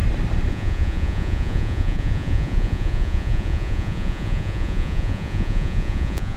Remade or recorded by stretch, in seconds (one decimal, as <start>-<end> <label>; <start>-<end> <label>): 0.0-0.5 recorded; 0.5-6.4 remade